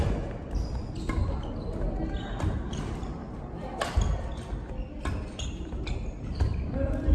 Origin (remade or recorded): recorded